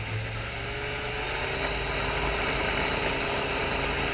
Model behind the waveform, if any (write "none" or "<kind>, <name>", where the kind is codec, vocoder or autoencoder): none